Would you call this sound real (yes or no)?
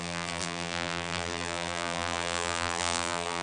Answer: no